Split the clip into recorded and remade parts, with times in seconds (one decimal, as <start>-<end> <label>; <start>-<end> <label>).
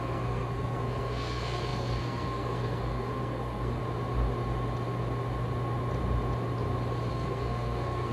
0.0-3.8 remade; 3.8-7.1 recorded; 7.1-8.1 remade